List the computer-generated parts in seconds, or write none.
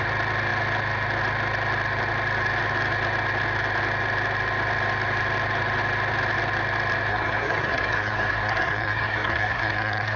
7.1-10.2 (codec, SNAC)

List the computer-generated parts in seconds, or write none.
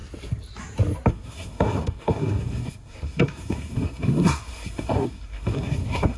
1.1-6.2 (codec, SNAC)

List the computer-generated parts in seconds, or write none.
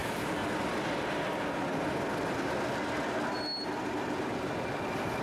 none